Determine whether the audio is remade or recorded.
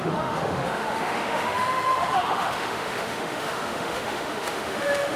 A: remade